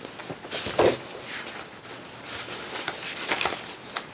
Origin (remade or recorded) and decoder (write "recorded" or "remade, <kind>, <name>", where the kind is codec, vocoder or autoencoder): recorded